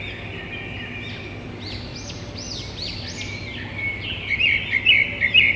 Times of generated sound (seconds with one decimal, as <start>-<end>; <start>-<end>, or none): none

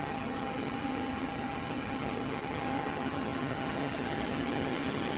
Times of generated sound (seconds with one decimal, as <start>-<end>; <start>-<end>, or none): 0.0-5.2

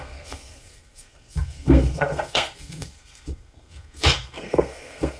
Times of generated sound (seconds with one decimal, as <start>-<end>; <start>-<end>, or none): 0.0-5.2